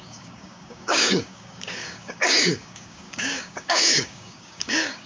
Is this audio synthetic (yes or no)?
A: yes